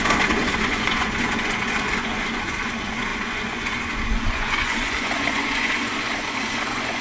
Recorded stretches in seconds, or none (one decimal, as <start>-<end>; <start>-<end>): none

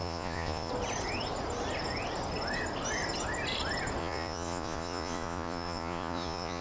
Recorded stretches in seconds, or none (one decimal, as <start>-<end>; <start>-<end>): 0.7-4.0

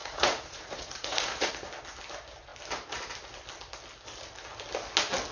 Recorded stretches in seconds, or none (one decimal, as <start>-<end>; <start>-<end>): 1.5-5.3

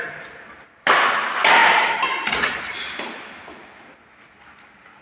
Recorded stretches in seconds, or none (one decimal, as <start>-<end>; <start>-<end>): 0.0-5.0